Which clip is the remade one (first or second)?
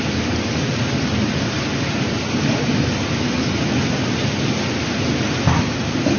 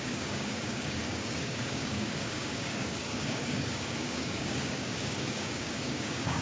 second